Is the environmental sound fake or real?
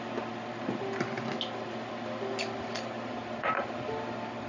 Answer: real